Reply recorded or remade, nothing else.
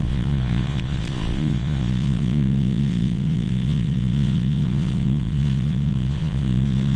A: remade